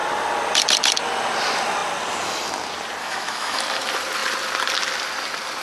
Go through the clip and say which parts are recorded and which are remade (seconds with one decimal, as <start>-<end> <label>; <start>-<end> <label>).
0.0-3.0 recorded; 3.0-3.6 remade; 3.6-5.6 recorded

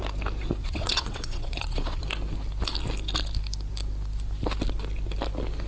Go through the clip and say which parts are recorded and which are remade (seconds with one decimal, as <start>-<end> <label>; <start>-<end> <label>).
0.0-0.6 recorded; 0.6-2.0 remade; 2.0-5.7 recorded

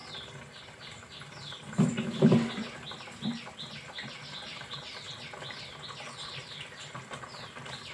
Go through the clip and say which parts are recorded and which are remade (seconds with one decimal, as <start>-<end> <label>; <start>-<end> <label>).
0.0-2.5 remade; 2.5-7.9 recorded

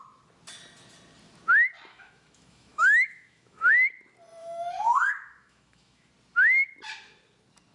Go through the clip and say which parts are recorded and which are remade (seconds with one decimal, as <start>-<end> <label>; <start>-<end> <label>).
0.0-1.9 recorded; 1.9-3.7 remade; 3.7-4.4 recorded; 4.4-6.1 remade; 6.1-7.7 recorded

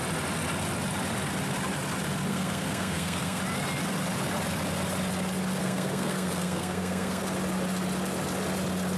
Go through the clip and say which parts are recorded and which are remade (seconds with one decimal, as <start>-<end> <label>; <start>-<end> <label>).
0.0-2.3 recorded; 2.3-3.4 remade; 3.4-5.6 recorded; 5.6-7.2 remade; 7.2-9.0 recorded

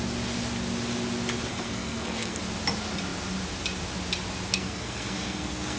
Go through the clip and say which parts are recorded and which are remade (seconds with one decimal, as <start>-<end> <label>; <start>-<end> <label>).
0.0-1.5 recorded; 1.5-2.4 remade; 2.4-4.5 recorded; 4.5-5.8 remade

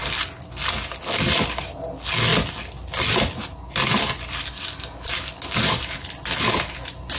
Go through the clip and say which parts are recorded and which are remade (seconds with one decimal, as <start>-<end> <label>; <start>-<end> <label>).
0.0-7.2 recorded

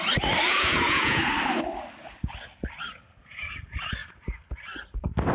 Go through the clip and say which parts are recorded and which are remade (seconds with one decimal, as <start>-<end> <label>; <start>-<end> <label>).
0.0-0.5 recorded; 0.5-1.2 remade; 1.2-5.3 recorded